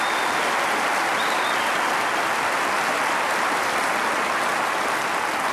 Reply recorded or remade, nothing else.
recorded